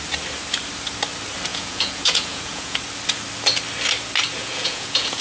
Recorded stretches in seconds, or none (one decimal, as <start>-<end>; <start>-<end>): 0.0-1.5; 2.8-4.4